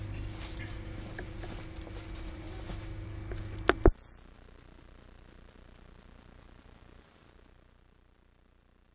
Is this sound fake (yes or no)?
no